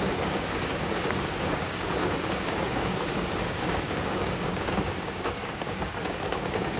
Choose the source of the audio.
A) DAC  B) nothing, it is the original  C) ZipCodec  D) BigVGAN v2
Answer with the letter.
A